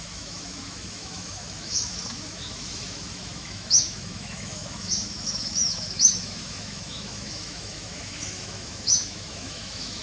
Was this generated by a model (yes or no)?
yes